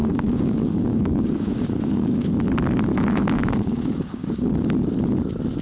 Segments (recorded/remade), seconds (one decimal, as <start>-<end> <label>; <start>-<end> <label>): 0.0-2.3 remade; 2.3-2.9 recorded; 2.9-4.5 remade; 4.5-5.6 recorded